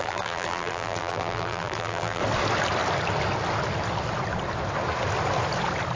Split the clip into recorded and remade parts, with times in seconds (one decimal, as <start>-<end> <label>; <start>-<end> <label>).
0.0-2.2 remade; 2.2-6.0 recorded